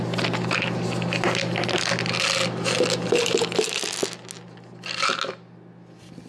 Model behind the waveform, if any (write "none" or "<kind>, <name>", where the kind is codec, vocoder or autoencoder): none